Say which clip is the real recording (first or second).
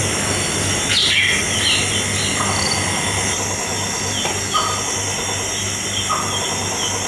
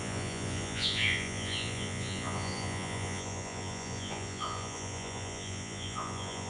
first